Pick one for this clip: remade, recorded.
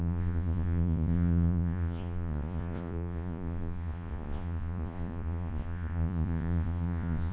remade